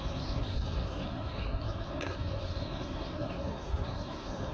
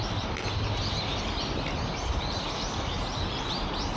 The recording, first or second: second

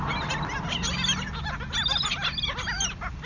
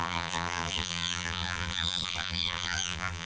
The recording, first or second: first